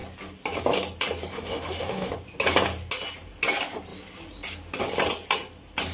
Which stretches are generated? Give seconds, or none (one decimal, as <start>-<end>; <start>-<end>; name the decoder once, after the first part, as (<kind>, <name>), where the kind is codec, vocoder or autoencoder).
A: 1.3-2.1 (autoencoder, DAC-VAE)